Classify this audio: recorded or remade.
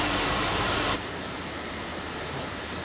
remade